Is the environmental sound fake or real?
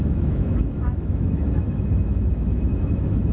fake